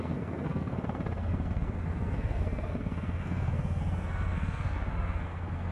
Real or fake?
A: fake